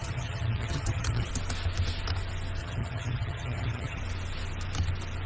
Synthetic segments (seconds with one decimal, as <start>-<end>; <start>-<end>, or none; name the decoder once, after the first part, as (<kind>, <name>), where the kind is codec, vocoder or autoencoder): 0.0-1.3 (vocoder, HiFi-GAN); 2.6-4.0